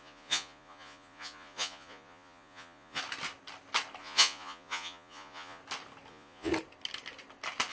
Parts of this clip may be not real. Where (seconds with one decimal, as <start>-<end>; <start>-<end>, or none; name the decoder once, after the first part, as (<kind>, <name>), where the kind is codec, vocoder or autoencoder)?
0.0-3.0 (vocoder, Vocos); 4.0-5.6; 6.1-6.5